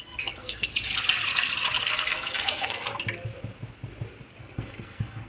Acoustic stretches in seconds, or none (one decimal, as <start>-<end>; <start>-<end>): 0.7-1.8; 2.9-4.4